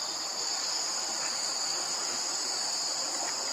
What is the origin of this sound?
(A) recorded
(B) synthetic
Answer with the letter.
A